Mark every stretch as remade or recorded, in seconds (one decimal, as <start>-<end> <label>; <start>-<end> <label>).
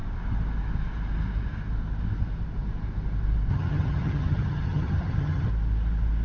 0.0-3.5 recorded; 3.5-5.5 remade; 5.5-6.2 recorded